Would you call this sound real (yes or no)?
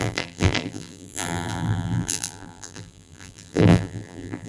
no